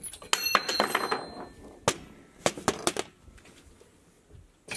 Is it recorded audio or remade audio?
recorded